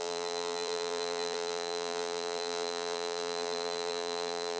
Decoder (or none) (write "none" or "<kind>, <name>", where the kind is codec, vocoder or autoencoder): vocoder, BigVGAN v2